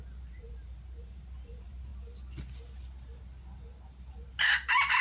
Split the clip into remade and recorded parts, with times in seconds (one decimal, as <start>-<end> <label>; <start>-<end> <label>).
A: 0.0-1.9 remade; 1.9-5.0 recorded